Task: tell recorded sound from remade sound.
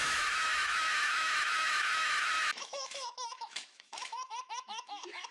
remade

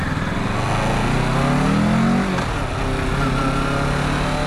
recorded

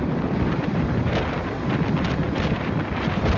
recorded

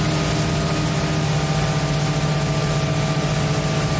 recorded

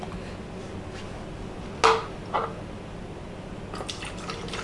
recorded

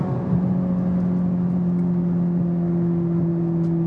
recorded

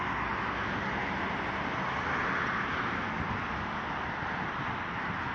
recorded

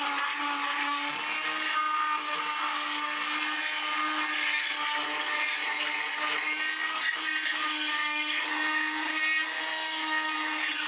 recorded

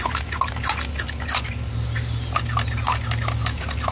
recorded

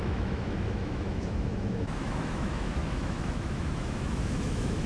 remade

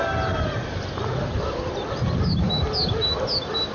recorded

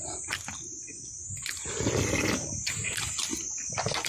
recorded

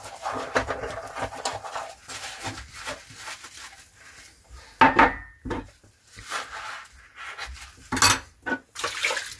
recorded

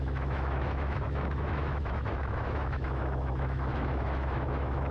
remade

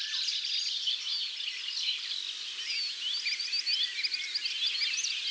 recorded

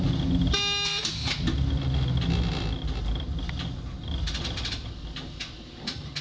recorded